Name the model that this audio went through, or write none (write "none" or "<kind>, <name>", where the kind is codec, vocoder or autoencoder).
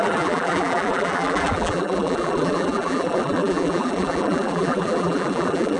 vocoder, BigVGAN v2